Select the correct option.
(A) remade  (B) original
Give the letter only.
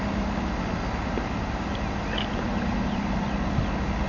B